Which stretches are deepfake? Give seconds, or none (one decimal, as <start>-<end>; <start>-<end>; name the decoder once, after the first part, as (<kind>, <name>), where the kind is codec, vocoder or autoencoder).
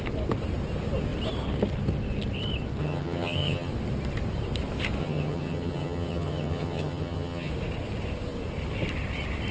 2.8-3.7 (vocoder, HiFi-GAN); 5.0-7.5